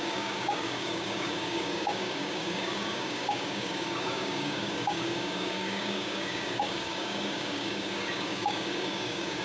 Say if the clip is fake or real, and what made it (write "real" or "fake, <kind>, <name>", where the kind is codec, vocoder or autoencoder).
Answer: fake, codec, DAC